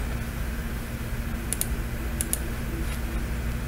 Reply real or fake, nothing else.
real